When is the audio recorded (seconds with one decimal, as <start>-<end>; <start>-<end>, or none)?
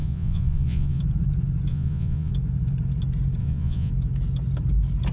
1.0-1.7; 2.3-3.4; 3.9-5.1